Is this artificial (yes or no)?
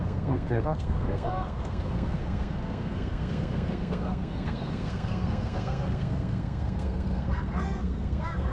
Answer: yes